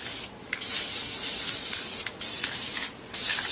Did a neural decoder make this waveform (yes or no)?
no